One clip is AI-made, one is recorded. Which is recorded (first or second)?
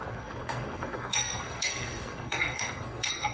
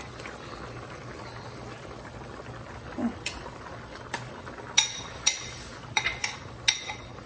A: second